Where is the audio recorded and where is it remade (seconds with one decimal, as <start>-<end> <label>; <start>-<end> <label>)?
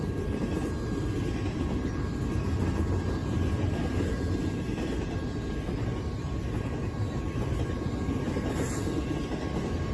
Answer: 0.0-9.9 recorded